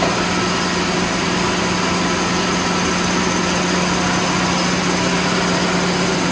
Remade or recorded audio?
recorded